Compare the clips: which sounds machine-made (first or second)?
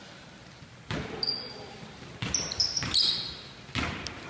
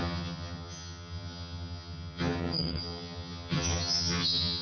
second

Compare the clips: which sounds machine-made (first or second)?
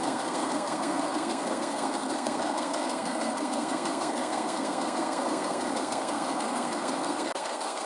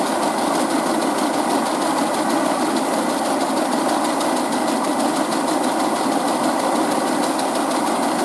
first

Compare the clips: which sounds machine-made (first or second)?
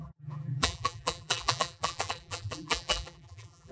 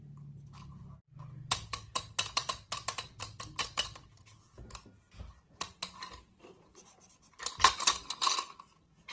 first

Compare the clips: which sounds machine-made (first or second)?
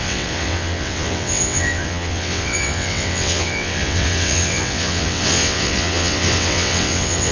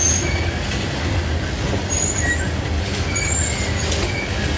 first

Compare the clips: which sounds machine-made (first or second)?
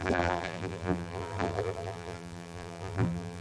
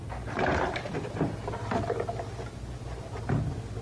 first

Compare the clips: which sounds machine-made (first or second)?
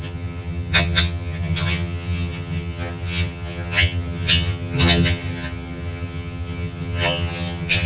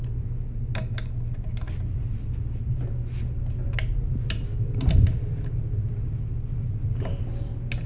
first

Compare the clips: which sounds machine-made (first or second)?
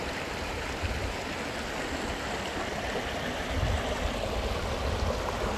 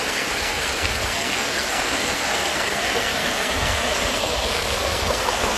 second